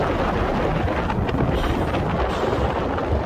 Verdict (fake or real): real